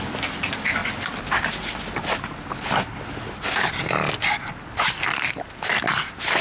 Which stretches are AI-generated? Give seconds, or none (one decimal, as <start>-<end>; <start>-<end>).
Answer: none